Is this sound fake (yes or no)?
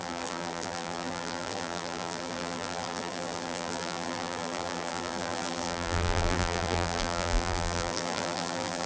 yes